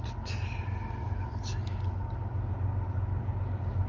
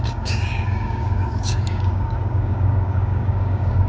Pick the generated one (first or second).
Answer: second